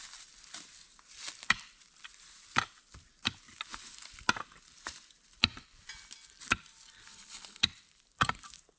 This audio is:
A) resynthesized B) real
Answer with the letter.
A